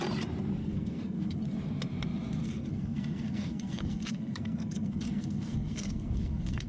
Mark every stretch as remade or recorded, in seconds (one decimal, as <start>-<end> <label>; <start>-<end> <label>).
0.0-0.6 recorded; 0.6-1.4 remade; 1.4-2.4 recorded; 2.4-6.7 remade